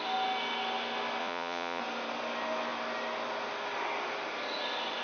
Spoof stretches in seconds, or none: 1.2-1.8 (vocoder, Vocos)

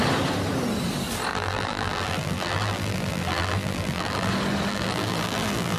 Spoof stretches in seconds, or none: 1.3-4.3 (vocoder, BigVGAN v2); 4.7-5.8

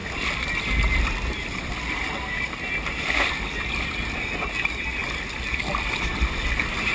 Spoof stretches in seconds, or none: none

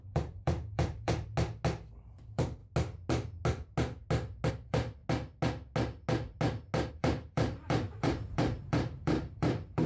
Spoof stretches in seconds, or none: 0.0-1.3 (vocoder, BigVGAN v2); 2.0-2.6; 4.5-5.0; 6.9-9.9

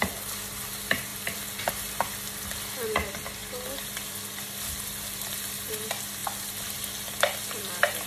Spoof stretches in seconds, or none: none

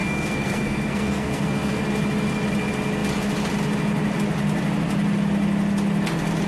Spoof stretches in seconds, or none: 0.0-1.8 (codec, SNAC)